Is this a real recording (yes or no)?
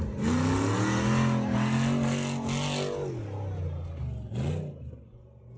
yes